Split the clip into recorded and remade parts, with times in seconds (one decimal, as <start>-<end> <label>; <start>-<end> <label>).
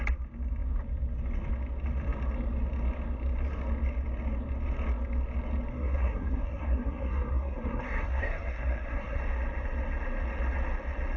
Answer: 0.0-5.7 recorded; 5.7-9.2 remade; 9.2-11.2 recorded